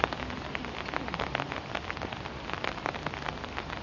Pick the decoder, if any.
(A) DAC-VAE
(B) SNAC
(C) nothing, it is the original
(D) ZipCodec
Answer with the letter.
C